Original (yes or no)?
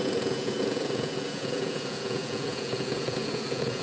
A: no